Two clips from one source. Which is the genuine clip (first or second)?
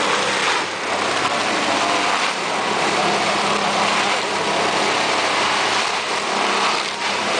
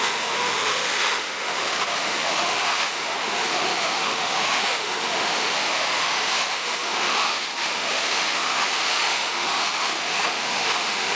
first